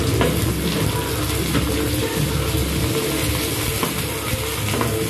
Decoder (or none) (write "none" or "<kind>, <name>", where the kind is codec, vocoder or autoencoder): none